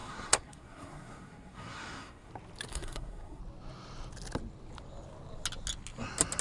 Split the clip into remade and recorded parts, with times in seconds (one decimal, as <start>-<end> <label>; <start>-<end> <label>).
0.0-2.3 remade; 2.3-2.7 recorded; 2.7-3.4 remade; 3.4-6.4 recorded